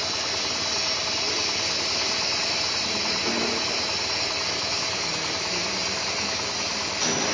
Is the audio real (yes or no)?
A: yes